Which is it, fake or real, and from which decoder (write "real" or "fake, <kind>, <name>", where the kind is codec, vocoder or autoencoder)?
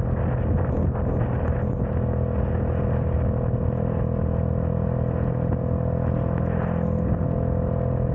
real